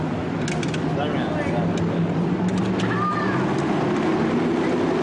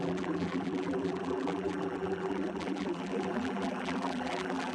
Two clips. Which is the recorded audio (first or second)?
first